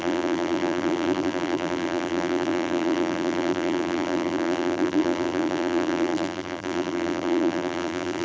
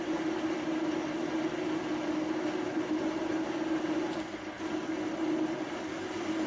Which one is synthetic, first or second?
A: first